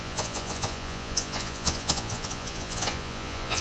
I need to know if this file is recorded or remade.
remade